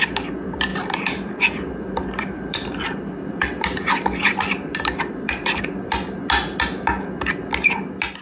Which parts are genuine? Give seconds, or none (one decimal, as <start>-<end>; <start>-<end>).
0.0-0.7; 5.6-8.2